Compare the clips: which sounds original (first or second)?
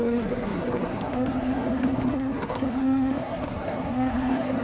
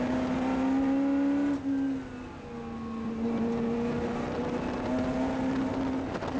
second